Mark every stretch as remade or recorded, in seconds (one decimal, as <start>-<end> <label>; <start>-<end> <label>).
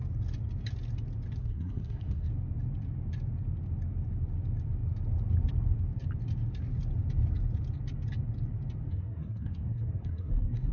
0.0-1.4 recorded; 1.4-2.3 remade; 2.3-8.9 recorded; 8.9-10.7 remade